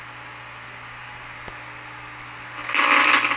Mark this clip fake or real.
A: real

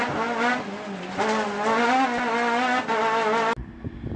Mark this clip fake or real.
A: real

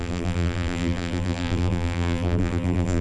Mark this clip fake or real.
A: fake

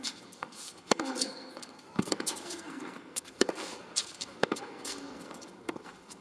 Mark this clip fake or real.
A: fake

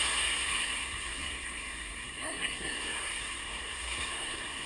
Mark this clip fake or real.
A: fake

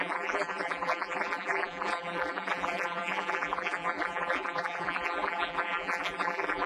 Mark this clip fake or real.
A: fake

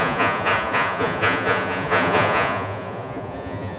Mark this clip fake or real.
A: fake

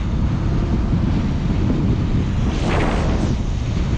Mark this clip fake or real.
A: real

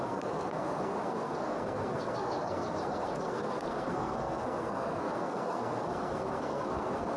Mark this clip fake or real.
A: fake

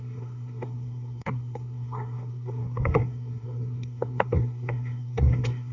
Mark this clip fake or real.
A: fake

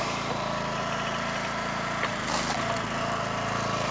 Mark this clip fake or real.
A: fake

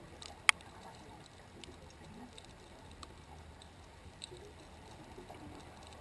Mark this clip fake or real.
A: real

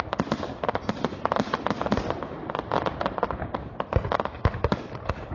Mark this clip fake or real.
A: real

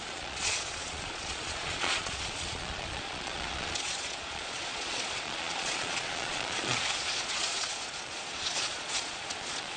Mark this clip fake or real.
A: fake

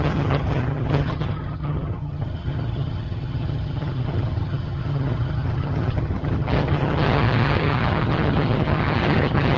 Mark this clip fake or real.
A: fake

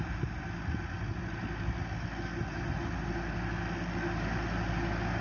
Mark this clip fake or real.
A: real